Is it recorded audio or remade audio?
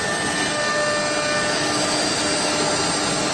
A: recorded